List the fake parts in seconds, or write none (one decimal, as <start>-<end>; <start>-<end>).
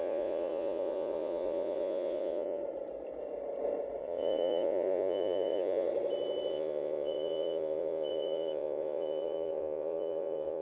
0.0-2.6; 4.0-5.9; 6.5-10.6